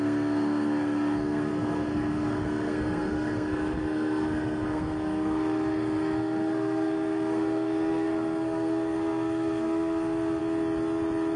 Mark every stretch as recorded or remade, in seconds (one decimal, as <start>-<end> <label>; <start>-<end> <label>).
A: 0.0-10.4 remade; 10.4-11.4 recorded